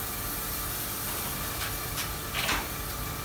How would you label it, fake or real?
fake